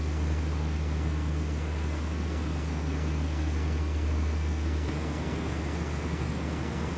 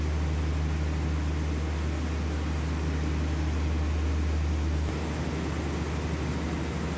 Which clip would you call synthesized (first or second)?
first